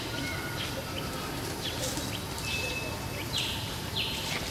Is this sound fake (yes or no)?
no